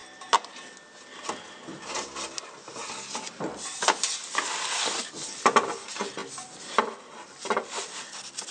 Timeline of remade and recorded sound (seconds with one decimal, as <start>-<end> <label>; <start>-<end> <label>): 0.0-0.6 remade; 0.6-8.5 recorded